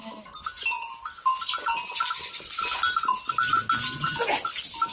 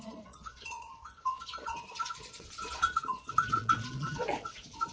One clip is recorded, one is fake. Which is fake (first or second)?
second